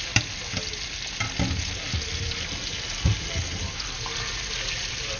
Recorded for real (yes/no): yes